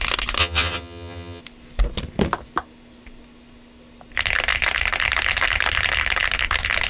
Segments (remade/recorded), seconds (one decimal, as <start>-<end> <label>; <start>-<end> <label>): 0.0-0.4 recorded; 0.4-1.4 remade; 1.4-6.9 recorded